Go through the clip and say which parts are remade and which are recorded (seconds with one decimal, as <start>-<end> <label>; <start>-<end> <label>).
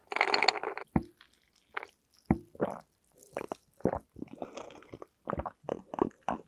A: 0.0-6.5 recorded